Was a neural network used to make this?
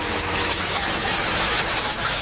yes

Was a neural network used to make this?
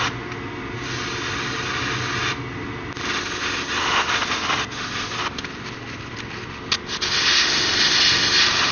no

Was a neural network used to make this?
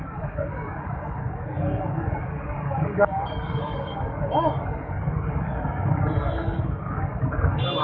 yes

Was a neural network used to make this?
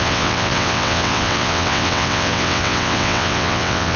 yes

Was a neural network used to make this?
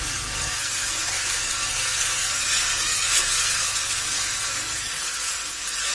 yes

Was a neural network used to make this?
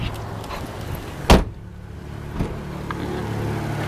no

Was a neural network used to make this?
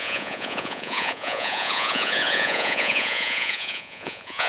yes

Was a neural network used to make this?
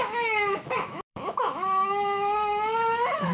yes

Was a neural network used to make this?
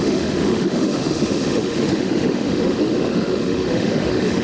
yes